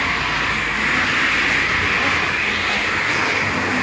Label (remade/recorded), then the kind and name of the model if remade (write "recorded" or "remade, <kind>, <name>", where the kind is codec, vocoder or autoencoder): recorded